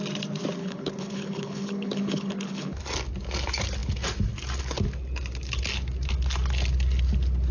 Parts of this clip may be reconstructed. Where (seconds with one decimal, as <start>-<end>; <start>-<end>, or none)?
0.6-2.8